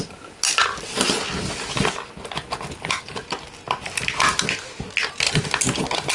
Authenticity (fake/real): real